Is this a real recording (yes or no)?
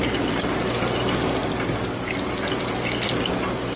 yes